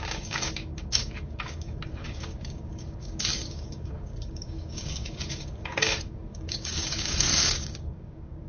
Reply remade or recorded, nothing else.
remade